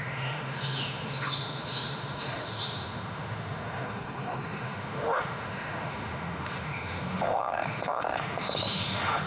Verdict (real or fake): fake